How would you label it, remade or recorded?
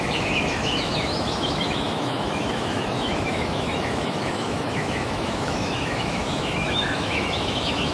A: remade